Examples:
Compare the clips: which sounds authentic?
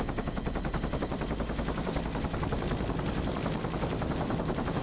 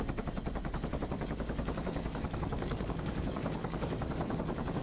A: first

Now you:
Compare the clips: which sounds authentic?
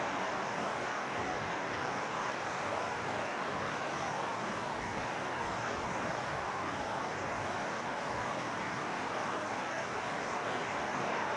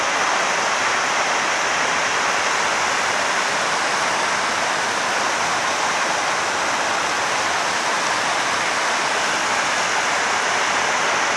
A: second